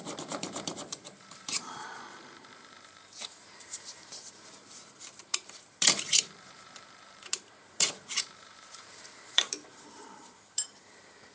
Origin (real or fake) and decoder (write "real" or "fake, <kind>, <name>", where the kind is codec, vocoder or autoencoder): fake, vocoder, BigVGAN v2